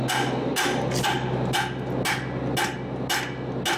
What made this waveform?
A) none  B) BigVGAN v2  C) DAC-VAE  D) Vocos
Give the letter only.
A